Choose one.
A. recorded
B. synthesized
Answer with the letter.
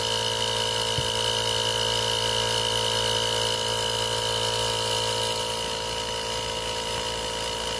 A